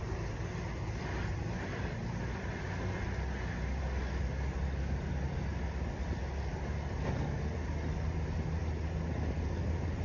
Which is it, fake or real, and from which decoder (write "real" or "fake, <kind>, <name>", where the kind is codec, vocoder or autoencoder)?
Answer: real